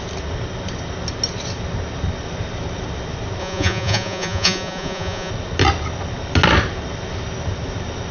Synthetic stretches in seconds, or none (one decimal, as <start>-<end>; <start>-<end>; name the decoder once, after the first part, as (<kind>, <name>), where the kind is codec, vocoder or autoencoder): 3.4-5.3 (vocoder, Vocos)